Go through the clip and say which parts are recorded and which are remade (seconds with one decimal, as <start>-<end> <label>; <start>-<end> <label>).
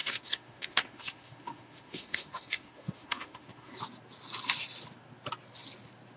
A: 0.0-3.7 remade; 3.7-6.2 recorded